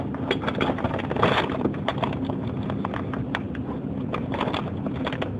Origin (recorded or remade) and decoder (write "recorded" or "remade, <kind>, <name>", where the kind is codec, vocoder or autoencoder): recorded